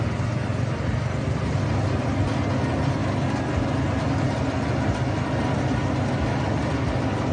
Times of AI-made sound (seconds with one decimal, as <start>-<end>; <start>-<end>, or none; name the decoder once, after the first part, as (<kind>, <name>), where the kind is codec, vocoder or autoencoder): none